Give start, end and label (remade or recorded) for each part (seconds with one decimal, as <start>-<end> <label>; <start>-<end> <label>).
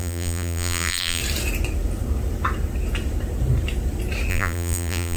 0.0-1.2 remade; 1.2-4.3 recorded; 4.3-5.2 remade